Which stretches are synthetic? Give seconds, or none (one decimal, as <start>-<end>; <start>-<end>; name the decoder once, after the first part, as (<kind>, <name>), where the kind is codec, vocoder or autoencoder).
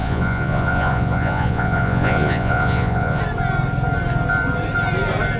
0.0-3.2 (vocoder, Vocos)